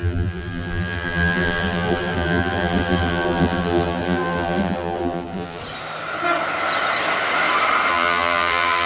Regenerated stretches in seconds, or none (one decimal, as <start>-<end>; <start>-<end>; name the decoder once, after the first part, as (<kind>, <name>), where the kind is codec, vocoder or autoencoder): 0.0-5.6 (vocoder, BigVGAN v2); 7.9-8.9